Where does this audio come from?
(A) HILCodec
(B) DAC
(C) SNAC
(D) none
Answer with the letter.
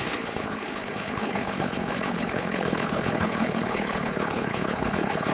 A